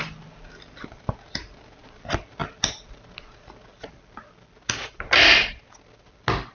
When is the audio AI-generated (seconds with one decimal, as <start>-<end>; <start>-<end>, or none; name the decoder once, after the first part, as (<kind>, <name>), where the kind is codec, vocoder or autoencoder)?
none